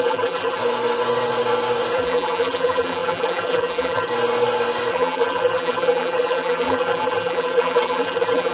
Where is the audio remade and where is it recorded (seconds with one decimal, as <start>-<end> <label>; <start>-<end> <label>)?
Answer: 0.0-0.6 remade; 0.6-1.9 recorded; 1.9-4.1 remade; 4.1-4.9 recorded; 4.9-8.5 remade